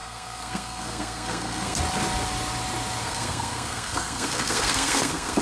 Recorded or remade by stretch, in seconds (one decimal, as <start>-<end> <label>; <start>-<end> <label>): 0.0-1.8 remade; 1.8-3.0 recorded; 3.0-5.4 remade